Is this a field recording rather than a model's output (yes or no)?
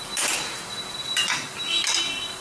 yes